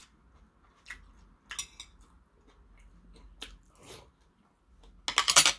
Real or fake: real